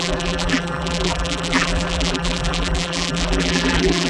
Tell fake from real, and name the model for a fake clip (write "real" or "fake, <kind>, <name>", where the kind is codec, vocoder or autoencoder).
fake, vocoder, BigVGAN v2